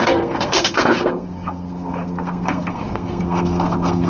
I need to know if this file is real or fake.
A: fake